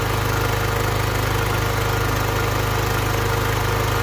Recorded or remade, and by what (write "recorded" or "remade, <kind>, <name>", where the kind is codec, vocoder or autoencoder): recorded